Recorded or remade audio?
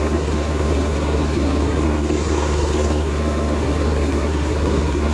remade